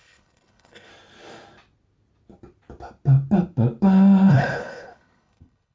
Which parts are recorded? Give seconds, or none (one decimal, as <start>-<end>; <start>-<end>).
0.9-4.3